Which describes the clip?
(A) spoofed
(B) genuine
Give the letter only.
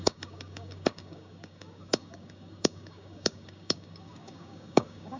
A